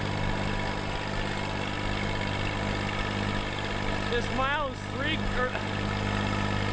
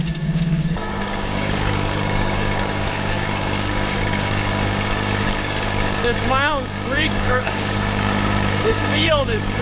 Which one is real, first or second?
first